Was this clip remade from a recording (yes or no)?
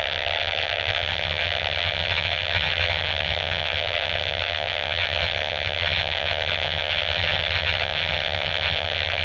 yes